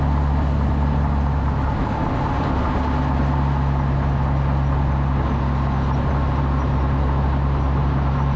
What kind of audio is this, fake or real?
real